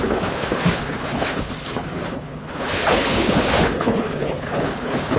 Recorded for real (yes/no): no